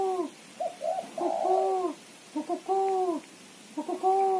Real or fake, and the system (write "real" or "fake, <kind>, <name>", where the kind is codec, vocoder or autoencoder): real